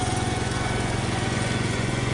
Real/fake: fake